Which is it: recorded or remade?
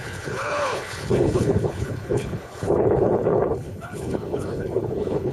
remade